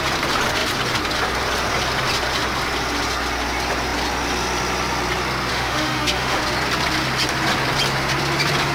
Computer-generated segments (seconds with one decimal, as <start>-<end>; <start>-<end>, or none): 5.5-6.4